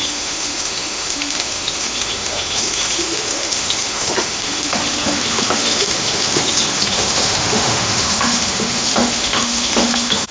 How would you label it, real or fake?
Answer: fake